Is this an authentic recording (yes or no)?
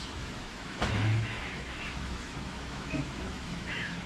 no